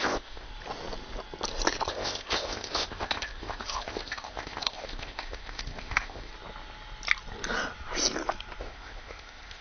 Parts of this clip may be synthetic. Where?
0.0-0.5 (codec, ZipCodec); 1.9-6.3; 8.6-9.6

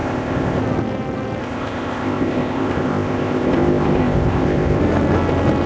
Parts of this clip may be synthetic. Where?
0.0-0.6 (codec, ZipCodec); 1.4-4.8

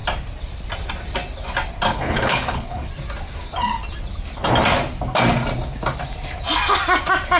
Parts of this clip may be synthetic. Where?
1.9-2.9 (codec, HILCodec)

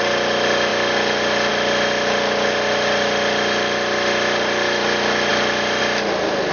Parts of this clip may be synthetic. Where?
none